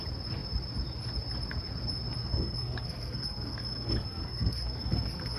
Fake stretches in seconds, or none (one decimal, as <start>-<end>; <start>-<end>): 2.2-5.4